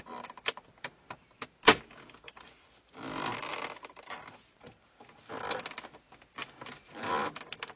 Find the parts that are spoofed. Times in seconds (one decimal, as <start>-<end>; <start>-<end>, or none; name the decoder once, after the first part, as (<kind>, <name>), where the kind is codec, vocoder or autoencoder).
none